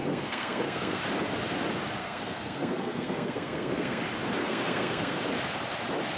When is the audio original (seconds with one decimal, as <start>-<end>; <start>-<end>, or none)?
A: 1.0-2.0; 4.0-4.4; 5.2-6.2